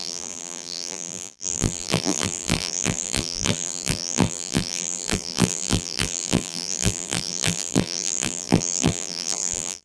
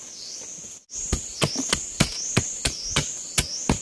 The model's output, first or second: first